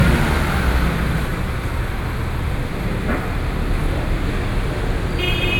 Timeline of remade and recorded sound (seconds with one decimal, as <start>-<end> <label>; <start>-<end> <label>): 0.0-5.6 recorded